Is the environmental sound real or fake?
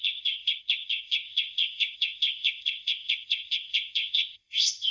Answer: fake